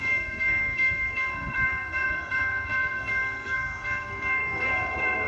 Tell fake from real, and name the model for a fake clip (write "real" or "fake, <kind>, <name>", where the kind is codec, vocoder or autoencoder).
fake, codec, SNAC